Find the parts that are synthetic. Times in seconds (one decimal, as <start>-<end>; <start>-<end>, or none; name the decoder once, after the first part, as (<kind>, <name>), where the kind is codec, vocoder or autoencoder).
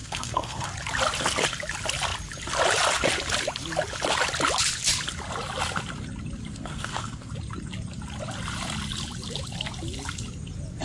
0.0-0.7 (codec, SNAC); 6.5-7.3